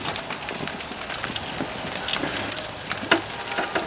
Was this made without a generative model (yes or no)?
yes